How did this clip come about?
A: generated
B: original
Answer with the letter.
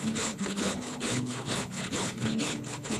A